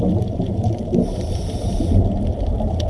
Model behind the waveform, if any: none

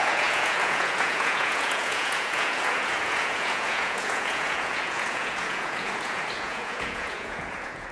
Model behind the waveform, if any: vocoder, Vocos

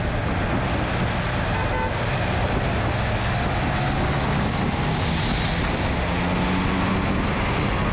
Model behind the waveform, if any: none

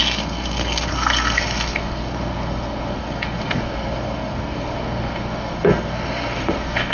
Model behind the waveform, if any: codec, SNAC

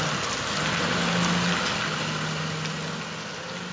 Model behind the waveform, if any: none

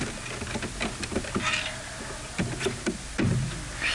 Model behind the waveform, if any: none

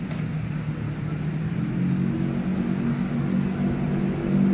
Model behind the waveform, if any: none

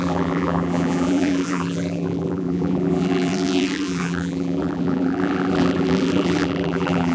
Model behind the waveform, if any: vocoder, BigVGAN v2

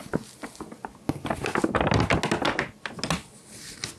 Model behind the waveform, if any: none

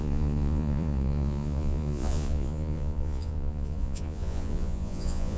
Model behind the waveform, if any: vocoder, Vocos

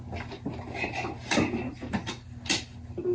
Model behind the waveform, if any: none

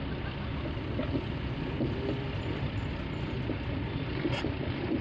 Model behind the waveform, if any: none